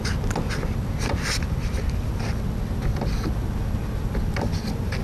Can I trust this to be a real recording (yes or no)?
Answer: yes